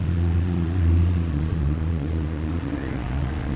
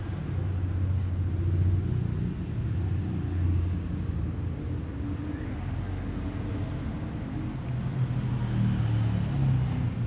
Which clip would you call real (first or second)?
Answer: second